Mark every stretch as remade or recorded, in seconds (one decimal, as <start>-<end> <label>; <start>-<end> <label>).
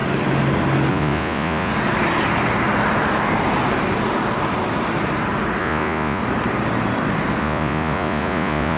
0.0-0.9 recorded; 0.9-1.7 remade; 1.7-5.6 recorded; 5.6-6.2 remade; 6.2-7.4 recorded; 7.4-8.8 remade